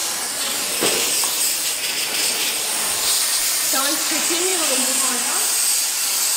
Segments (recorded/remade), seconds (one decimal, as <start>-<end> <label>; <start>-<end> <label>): 0.0-3.8 remade; 3.8-4.5 recorded; 4.5-5.1 remade; 5.1-6.4 recorded